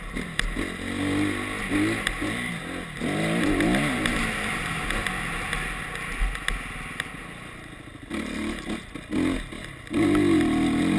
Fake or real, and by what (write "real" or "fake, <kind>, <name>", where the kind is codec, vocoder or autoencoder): real